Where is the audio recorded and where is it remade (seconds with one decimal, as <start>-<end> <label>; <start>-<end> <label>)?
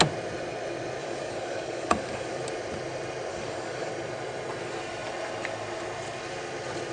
0.0-1.0 recorded; 1.0-2.4 remade; 2.4-3.3 recorded; 3.3-3.9 remade; 3.9-6.9 recorded